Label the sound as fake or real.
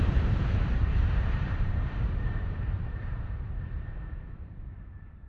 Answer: fake